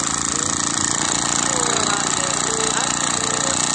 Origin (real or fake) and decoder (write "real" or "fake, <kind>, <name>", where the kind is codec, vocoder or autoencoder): real